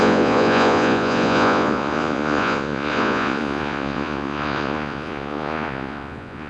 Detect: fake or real fake